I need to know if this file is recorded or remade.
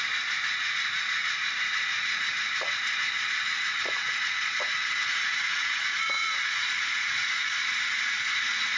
remade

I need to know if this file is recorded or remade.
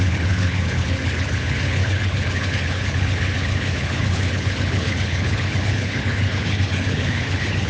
remade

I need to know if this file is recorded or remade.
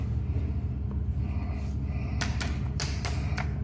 recorded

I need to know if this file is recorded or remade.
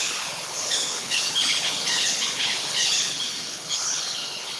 remade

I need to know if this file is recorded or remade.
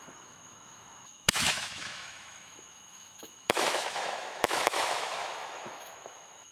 remade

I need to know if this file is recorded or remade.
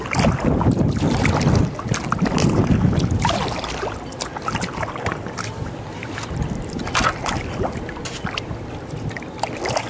recorded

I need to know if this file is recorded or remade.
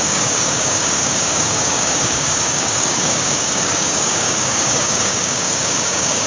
remade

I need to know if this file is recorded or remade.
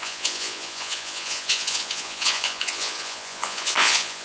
remade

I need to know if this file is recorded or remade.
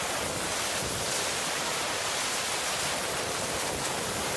recorded